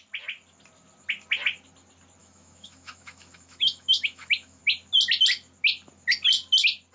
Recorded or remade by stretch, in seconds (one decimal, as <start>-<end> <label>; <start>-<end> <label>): 0.0-2.2 recorded; 2.2-4.6 remade; 4.6-6.9 recorded